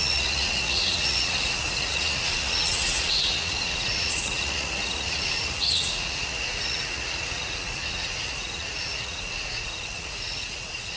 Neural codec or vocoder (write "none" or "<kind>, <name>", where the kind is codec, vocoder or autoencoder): vocoder, Vocos